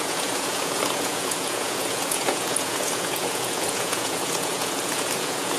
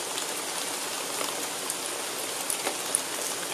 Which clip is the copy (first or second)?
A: first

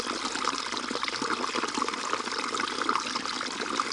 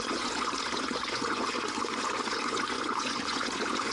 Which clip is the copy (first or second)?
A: second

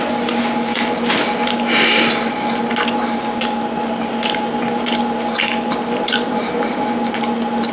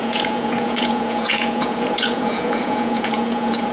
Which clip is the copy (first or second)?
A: second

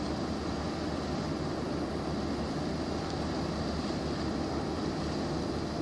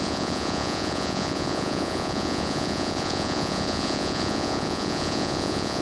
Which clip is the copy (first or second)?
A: second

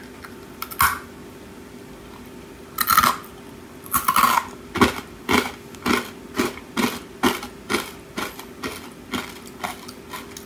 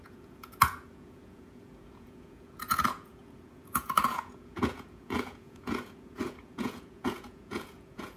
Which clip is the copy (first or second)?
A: second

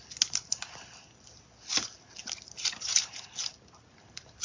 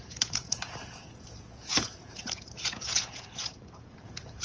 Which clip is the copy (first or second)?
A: second